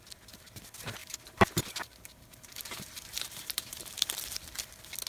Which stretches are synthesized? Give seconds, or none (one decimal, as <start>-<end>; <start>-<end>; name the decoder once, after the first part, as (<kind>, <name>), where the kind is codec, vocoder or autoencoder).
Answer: 1.0-3.9 (vocoder, BigVGAN v2)